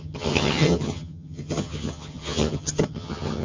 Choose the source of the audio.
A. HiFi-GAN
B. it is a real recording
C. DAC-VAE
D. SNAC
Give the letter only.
A